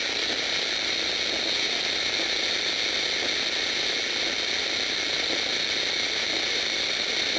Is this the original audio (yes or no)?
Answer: yes